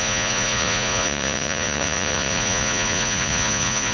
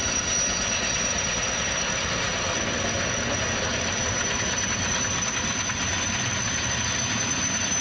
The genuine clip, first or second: second